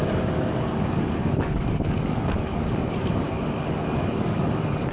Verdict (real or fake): fake